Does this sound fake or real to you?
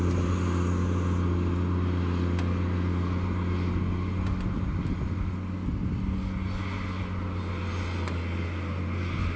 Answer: real